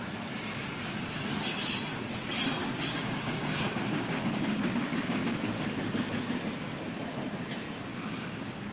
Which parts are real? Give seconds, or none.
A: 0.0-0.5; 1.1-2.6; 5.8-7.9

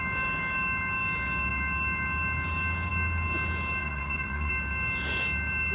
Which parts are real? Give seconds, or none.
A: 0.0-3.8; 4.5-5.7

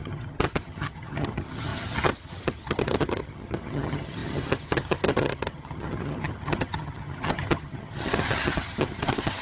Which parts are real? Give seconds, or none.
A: none